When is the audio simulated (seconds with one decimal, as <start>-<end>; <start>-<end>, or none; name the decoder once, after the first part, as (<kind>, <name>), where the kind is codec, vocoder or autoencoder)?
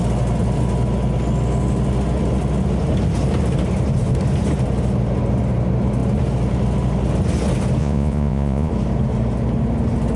7.8-8.7 (vocoder, Vocos)